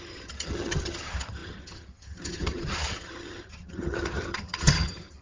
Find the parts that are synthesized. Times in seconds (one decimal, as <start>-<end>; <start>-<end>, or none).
0.0-5.2